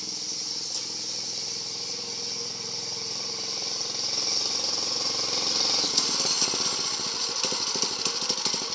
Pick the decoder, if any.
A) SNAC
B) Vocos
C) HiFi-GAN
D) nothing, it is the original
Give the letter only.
D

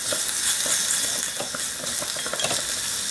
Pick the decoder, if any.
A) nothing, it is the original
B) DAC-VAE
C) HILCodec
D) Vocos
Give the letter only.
A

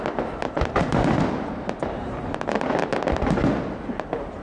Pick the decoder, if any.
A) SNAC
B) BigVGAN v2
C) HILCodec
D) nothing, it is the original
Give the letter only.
D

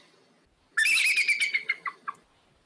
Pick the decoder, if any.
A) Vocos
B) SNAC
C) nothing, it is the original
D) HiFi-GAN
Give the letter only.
C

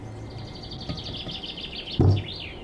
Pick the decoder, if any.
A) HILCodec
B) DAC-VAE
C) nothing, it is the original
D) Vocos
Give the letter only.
C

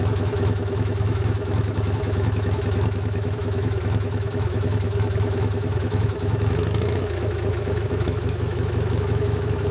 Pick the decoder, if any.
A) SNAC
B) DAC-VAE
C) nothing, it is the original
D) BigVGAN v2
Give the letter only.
B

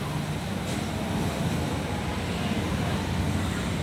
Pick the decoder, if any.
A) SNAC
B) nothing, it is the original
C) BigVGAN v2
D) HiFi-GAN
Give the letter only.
B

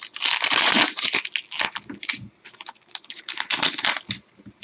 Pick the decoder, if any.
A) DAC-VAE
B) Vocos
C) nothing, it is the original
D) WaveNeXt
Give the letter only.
C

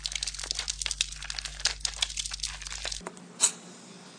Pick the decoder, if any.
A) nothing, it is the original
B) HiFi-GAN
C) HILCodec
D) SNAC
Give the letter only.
A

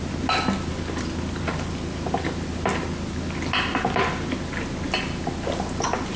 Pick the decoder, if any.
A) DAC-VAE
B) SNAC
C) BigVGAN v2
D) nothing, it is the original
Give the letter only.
D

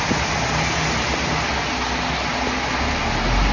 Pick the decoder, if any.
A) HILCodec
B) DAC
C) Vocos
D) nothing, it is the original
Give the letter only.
D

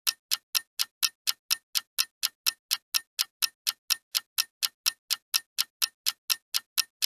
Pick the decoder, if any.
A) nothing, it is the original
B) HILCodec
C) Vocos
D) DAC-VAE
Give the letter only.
A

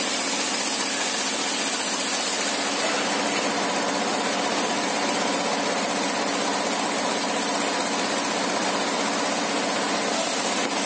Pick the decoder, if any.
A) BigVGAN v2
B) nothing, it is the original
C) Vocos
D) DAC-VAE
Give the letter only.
B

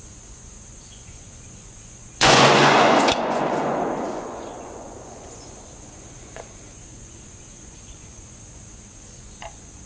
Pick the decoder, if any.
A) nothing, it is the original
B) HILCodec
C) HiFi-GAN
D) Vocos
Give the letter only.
D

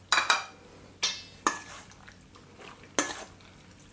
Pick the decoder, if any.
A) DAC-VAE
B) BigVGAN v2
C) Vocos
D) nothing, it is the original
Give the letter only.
D